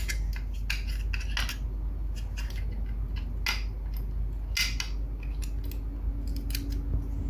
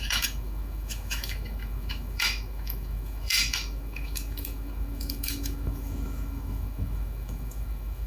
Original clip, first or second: first